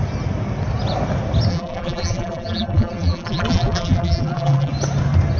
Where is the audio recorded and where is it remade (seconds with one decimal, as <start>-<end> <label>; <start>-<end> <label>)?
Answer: 0.0-1.5 recorded; 1.5-4.7 remade; 4.7-5.4 recorded